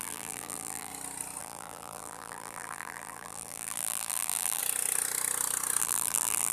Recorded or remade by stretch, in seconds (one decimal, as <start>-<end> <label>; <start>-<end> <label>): 0.0-0.9 remade; 0.9-1.4 recorded; 1.4-4.6 remade; 4.6-5.8 recorded; 5.8-6.5 remade